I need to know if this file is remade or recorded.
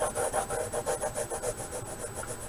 recorded